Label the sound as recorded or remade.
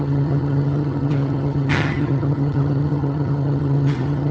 remade